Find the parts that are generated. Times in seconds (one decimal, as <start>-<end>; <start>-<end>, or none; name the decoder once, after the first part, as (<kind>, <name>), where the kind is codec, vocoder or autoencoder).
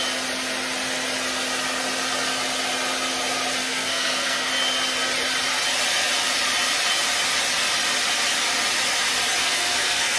3.6-4.5 (codec, SNAC); 9.4-10.2